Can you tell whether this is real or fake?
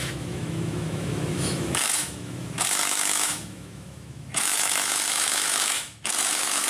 fake